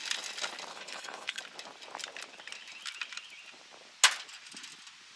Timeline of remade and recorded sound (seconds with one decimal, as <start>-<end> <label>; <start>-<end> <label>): 0.0-0.7 recorded; 0.7-1.4 remade; 1.4-5.2 recorded